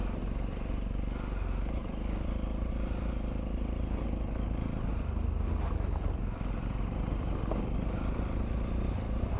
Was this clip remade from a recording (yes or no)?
no